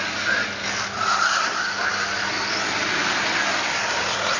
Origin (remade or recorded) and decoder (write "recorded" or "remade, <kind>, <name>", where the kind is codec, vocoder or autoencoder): recorded